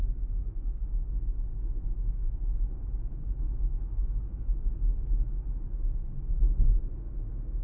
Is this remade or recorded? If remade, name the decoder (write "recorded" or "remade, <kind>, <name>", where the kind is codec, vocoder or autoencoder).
remade, autoencoder, DAC-VAE